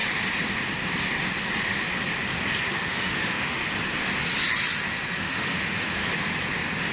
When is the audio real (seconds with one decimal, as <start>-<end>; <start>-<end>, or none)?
0.0-2.7; 3.6-5.2; 6.0-6.9